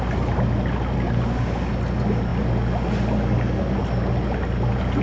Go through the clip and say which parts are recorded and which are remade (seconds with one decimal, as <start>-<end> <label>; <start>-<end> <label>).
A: 0.0-5.0 recorded